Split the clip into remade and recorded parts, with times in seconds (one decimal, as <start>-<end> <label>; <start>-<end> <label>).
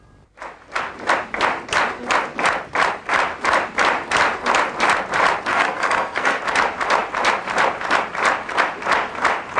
0.0-5.5 recorded; 5.5-6.4 remade; 6.4-9.6 recorded